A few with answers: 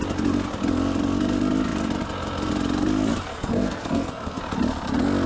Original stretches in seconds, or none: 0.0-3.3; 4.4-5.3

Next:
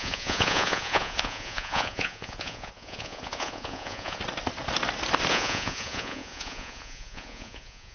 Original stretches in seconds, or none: 4.2-5.3